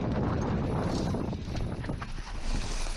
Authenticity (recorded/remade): recorded